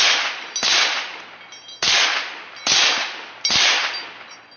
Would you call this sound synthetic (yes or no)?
no